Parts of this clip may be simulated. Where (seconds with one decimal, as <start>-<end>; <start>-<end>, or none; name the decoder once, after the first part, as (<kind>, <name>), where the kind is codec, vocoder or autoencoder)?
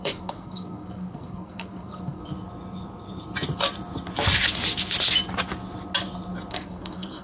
0.0-2.2 (codec, SNAC); 6.5-7.2